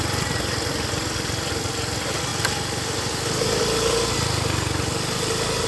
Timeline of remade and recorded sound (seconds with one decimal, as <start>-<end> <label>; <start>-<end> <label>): 0.0-5.7 recorded